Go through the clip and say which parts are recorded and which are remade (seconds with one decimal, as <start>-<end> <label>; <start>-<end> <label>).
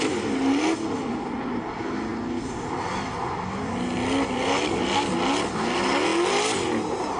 0.0-7.2 recorded